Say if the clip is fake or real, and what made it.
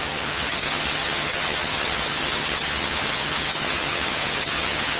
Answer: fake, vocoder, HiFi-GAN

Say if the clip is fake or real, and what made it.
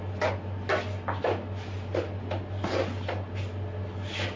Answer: real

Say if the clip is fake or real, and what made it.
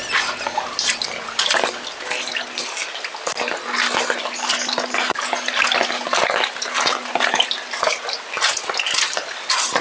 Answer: real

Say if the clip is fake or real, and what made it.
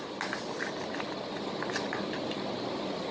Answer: real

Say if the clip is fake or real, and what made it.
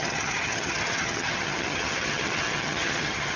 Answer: fake, vocoder, HiFi-GAN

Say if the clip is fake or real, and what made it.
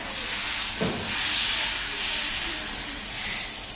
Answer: real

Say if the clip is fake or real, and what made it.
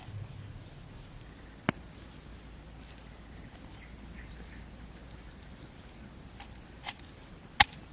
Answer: real